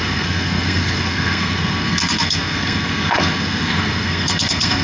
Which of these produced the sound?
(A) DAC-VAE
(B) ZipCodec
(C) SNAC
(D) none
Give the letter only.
C